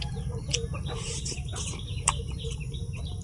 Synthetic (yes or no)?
yes